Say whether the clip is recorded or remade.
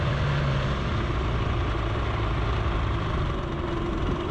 recorded